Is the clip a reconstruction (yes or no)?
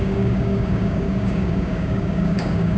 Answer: yes